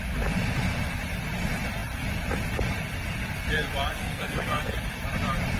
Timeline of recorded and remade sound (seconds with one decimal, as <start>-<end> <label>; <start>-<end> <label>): 0.0-3.9 recorded; 3.9-4.7 remade; 4.7-5.6 recorded